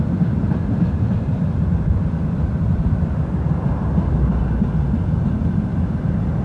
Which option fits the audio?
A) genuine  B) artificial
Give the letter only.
A